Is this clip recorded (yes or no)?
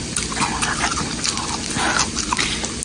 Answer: yes